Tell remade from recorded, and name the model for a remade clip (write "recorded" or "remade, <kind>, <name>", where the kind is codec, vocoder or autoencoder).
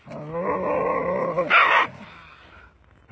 recorded